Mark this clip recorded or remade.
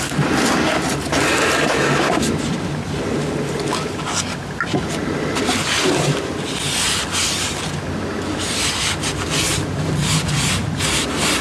recorded